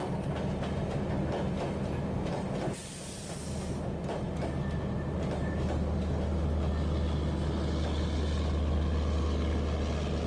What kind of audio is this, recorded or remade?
recorded